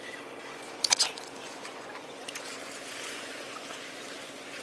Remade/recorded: remade